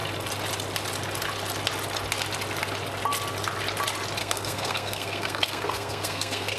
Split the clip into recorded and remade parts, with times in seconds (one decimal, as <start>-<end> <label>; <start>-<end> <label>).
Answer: 0.0-4.2 recorded; 4.2-6.6 remade